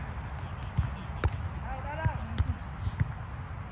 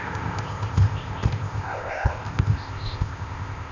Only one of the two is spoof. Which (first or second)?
second